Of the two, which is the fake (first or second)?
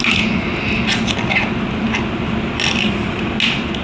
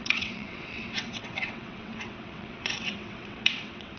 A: second